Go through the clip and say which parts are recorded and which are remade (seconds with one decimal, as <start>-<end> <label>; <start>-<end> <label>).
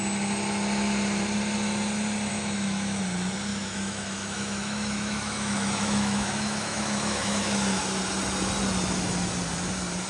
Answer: 0.0-2.3 recorded; 2.3-3.0 remade; 3.0-3.5 recorded; 3.5-7.8 remade; 7.8-10.1 recorded